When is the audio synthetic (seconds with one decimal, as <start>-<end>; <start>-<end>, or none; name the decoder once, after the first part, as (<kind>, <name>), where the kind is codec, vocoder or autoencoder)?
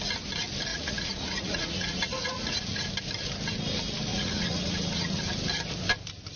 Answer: 0.7-2.8 (vocoder, Vocos); 4.1-5.2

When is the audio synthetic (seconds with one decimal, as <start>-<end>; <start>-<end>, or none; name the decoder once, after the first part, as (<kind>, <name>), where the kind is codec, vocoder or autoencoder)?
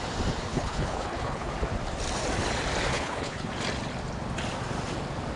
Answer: 0.5-1.5 (codec, HILCodec); 2.9-3.5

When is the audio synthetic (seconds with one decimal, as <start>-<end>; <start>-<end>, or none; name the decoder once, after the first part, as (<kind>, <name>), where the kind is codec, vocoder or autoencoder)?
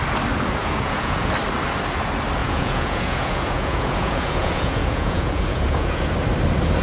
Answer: 0.6-1.3 (vocoder, Vocos); 2.4-6.1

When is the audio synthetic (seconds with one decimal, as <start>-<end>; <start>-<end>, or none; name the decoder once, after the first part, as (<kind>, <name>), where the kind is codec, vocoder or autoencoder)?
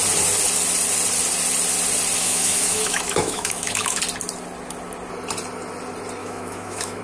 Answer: 2.2-4.0 (autoencoder, DAC-VAE); 6.2-7.0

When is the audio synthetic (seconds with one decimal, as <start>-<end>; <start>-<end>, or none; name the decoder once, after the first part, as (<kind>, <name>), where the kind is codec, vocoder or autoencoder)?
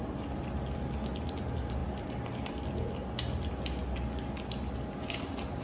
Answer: none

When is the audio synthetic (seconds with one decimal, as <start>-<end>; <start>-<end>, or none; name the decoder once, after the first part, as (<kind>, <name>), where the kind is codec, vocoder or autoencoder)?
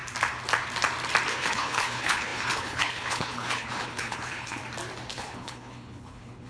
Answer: 1.3-4.6 (codec, HILCodec); 5.1-6.5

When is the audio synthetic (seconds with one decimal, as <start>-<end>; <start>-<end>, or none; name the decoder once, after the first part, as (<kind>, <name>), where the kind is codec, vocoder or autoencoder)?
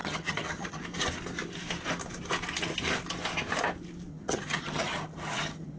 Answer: 0.0-0.8 (vocoder, HiFi-GAN); 4.1-5.8